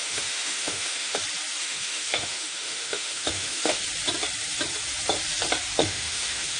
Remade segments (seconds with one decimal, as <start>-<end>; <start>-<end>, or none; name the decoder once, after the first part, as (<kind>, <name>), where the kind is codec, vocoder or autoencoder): 0.0-1.2 (autoencoder, DAC-VAE); 1.6-3.8; 5.8-6.6